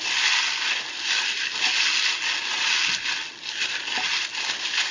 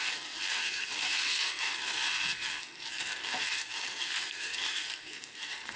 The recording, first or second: first